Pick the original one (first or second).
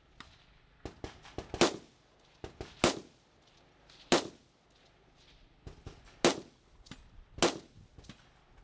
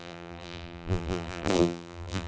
first